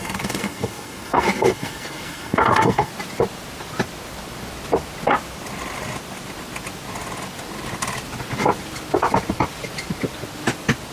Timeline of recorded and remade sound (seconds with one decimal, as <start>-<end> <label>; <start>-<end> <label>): 0.0-2.9 remade; 2.9-10.9 recorded